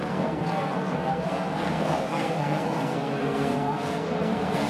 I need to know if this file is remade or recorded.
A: remade